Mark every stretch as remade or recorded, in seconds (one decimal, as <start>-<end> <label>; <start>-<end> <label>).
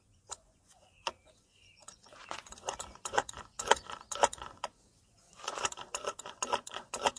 0.0-7.2 remade